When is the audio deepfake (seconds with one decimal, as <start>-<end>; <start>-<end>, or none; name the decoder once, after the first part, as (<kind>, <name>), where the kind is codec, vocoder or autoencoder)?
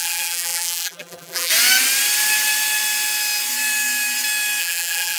0.0-1.5 (vocoder, BigVGAN v2); 4.6-5.2